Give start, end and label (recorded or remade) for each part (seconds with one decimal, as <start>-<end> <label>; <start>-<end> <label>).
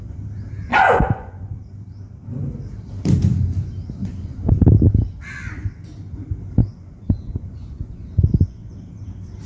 0.0-0.7 recorded; 0.7-1.5 remade; 1.5-4.0 recorded; 4.0-4.5 remade; 4.5-6.6 recorded; 6.6-8.8 remade; 8.8-9.5 recorded